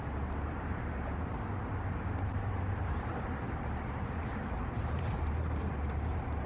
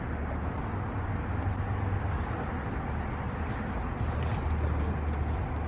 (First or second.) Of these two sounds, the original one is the second